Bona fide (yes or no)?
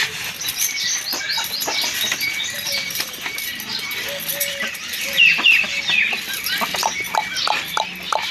no